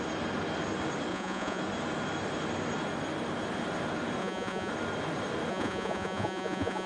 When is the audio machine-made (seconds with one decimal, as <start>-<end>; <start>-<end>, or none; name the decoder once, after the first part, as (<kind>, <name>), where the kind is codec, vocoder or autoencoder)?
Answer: 1.1-1.6 (vocoder, Vocos); 4.2-4.7; 5.5-6.9